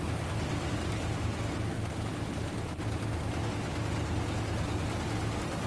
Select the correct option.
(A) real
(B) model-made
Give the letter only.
A